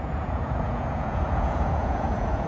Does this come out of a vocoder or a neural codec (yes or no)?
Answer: yes